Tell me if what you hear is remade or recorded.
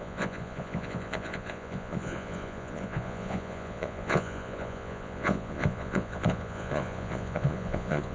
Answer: remade